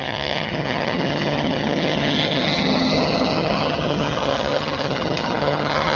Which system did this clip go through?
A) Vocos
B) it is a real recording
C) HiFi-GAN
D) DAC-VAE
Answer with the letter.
C